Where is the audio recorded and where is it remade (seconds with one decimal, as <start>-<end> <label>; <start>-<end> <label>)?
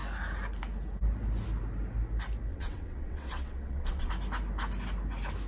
0.0-2.5 recorded; 2.5-4.1 remade; 4.1-5.5 recorded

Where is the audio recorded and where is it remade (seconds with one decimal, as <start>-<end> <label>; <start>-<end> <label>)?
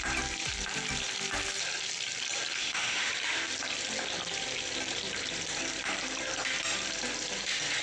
0.0-2.6 recorded; 2.6-3.1 remade; 3.1-7.8 recorded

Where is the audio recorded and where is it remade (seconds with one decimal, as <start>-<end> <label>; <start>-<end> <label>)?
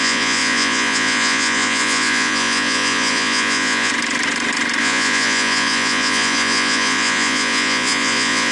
0.0-3.9 remade; 3.9-4.8 recorded; 4.8-8.5 remade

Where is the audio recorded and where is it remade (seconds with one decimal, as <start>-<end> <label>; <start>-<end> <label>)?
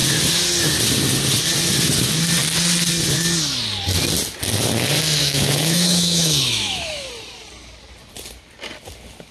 0.0-5.2 recorded; 5.2-7.1 remade; 7.1-9.3 recorded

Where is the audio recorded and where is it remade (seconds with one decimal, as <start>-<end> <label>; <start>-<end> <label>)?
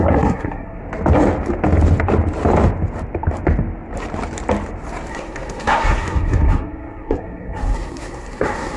0.0-0.8 remade; 0.8-5.1 recorded; 5.1-8.8 remade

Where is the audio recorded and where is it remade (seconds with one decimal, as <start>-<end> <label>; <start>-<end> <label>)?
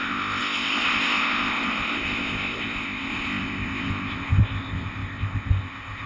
0.0-6.1 remade